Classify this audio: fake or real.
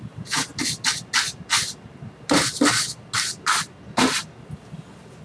real